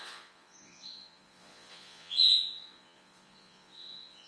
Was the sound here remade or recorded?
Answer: remade